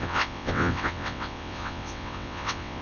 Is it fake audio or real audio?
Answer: fake